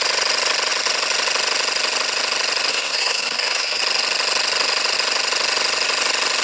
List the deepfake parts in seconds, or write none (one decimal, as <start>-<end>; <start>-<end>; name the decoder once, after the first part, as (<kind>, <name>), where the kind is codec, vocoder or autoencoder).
2.7-3.8 (codec, SNAC)